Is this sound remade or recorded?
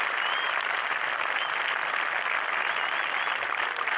recorded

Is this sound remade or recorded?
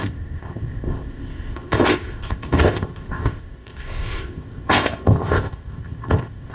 remade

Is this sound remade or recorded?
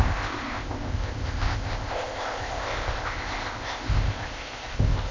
remade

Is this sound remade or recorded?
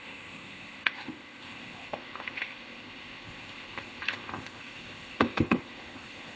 remade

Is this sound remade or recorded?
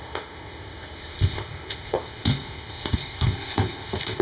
remade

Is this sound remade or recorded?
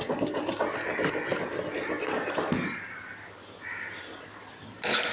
recorded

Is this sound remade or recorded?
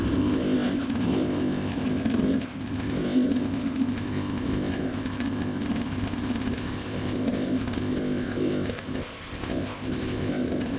remade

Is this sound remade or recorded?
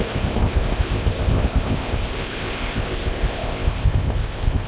remade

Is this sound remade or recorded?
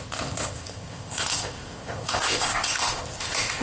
remade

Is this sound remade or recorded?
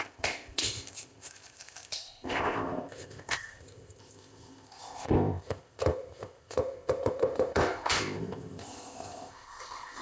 remade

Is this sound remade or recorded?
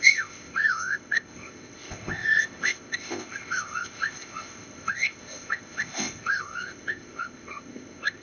remade